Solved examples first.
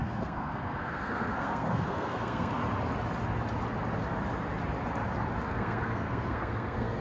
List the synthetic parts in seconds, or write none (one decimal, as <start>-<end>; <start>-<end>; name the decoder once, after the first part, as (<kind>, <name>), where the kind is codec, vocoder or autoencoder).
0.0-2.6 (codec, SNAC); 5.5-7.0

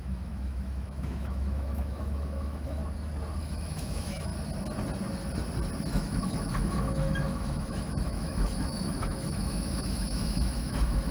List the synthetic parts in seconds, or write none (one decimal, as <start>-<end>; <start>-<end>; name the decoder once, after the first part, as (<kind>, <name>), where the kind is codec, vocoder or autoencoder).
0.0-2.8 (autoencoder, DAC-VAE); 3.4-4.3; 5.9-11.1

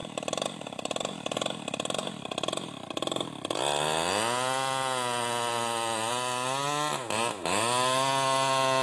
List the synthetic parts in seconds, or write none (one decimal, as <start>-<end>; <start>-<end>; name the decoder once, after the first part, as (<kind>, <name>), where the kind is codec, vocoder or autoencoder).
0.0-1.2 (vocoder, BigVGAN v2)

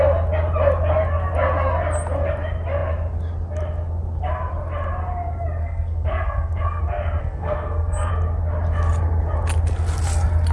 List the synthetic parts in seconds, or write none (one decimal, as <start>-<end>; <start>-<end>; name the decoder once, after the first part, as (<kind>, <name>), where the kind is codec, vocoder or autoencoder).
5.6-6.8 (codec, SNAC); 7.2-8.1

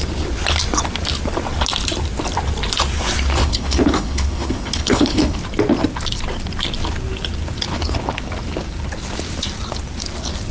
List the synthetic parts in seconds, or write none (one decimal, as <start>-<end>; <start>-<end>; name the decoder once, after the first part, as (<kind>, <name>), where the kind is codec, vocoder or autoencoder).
3.4-5.4 (codec, HILCodec); 7.7-8.2